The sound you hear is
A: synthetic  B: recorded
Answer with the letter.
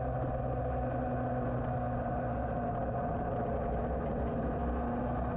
B